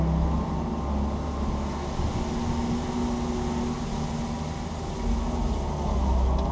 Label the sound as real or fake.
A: real